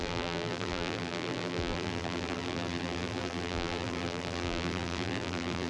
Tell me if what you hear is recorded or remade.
remade